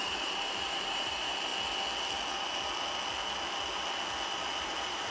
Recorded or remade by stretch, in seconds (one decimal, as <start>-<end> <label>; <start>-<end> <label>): 0.0-1.5 remade; 1.5-4.6 recorded; 4.6-5.1 remade